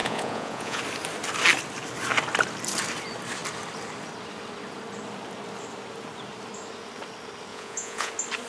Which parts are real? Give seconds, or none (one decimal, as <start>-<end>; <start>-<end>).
0.8-7.5; 8.1-8.5